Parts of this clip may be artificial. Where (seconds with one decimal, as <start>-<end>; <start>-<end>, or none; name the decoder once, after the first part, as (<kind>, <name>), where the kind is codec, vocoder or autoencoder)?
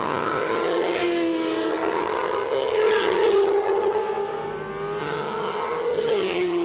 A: 0.0-1.0 (vocoder, HiFi-GAN); 1.7-4.0; 5.0-6.6